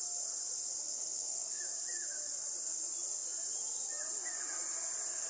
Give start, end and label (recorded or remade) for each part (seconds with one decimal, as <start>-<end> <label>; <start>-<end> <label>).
0.0-0.8 recorded; 0.8-1.6 remade; 1.6-5.3 recorded